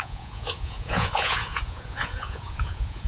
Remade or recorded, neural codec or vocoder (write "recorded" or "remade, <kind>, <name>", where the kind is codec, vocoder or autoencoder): remade, vocoder, Vocos